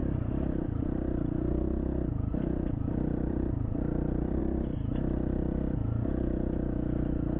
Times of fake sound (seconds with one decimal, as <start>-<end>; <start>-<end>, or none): 0.0-4.4